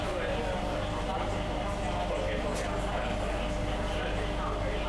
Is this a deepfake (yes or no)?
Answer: no